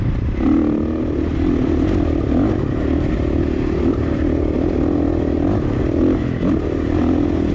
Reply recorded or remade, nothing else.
recorded